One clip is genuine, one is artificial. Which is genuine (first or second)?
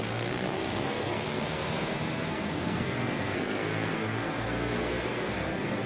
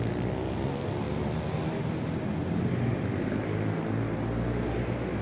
second